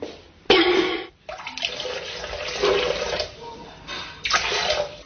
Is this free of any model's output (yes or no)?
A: no